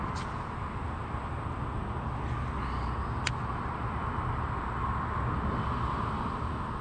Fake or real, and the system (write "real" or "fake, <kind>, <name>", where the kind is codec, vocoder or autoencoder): real